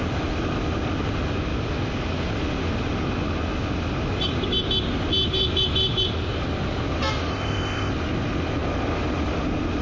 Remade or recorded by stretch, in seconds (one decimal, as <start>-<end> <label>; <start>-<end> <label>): 0.0-7.3 recorded; 7.3-7.9 remade; 7.9-9.8 recorded